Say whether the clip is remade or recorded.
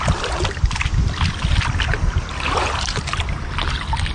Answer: recorded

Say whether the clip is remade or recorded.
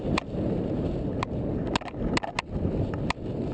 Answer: recorded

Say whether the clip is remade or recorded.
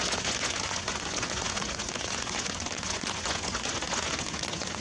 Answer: remade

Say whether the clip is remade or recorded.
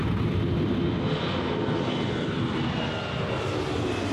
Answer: recorded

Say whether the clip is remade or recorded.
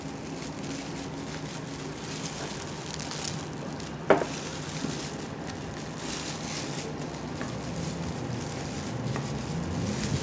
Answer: recorded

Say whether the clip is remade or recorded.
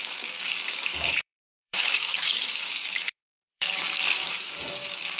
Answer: remade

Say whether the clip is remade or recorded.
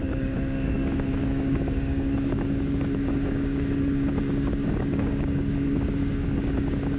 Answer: remade